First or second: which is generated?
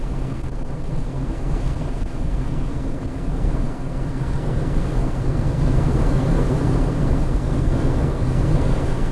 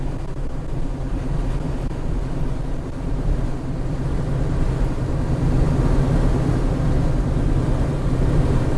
first